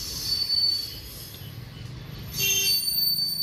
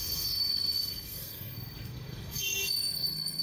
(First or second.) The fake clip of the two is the second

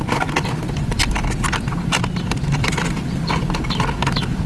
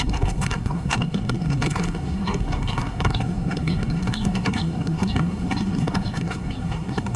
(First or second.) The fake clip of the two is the second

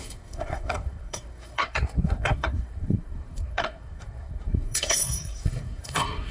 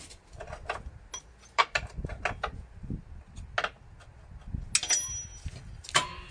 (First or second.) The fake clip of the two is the first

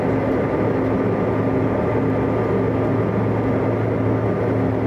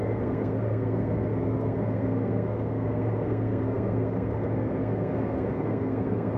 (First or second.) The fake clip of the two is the second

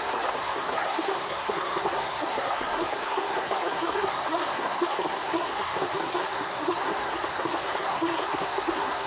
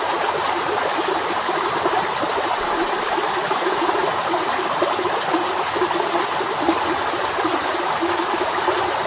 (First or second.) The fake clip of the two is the first